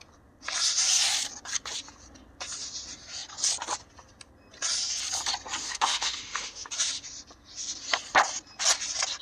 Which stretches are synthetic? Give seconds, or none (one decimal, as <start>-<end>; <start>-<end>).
5.6-6.7